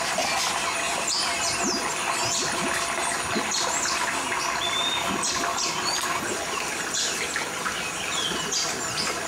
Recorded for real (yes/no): yes